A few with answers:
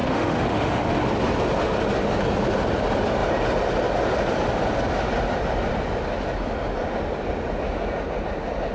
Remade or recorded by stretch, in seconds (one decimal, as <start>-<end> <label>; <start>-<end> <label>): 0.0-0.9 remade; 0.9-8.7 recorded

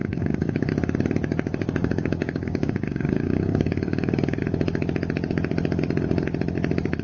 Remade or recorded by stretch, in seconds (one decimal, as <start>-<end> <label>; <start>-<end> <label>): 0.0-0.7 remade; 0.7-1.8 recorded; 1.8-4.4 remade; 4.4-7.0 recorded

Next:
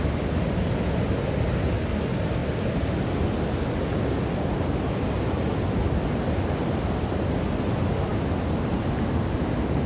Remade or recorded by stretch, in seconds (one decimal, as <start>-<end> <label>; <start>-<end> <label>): 0.0-9.9 recorded

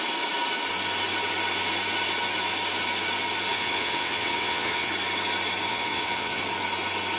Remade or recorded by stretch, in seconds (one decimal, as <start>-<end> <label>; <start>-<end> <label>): 0.0-3.5 recorded; 3.5-4.9 remade; 4.9-5.7 recorded; 5.7-6.4 remade; 6.4-7.2 recorded

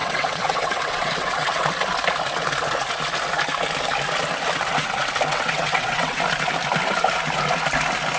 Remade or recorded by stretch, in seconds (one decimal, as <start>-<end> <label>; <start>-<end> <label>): 0.0-1.7 remade; 1.7-5.3 recorded; 5.3-6.2 remade; 6.2-8.2 recorded

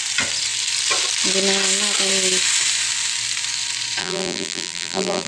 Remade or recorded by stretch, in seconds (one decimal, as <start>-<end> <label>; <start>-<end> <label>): 0.0-4.0 recorded; 4.0-5.3 remade